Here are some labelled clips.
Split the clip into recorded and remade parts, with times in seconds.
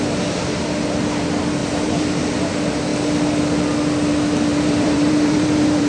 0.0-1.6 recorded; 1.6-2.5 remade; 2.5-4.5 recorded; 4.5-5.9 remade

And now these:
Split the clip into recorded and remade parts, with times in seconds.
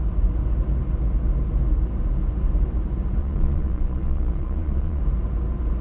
0.0-3.2 recorded; 3.2-5.0 remade; 5.0-5.8 recorded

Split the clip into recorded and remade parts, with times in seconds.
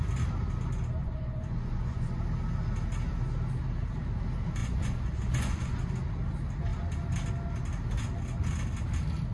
0.0-1.0 recorded; 1.0-2.2 remade; 2.2-4.6 recorded; 4.6-5.8 remade; 5.8-9.3 recorded